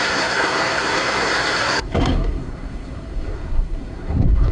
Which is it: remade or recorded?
remade